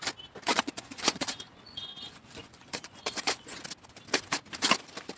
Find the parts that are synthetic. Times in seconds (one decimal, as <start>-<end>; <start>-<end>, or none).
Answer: 0.5-3.6